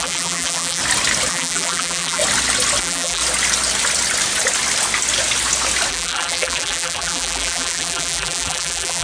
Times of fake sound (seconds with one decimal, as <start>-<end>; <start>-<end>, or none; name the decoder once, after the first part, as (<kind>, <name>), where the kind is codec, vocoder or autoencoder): 0.0-0.8 (vocoder, BigVGAN v2); 1.3-2.2; 2.8-3.2; 5.9-9.0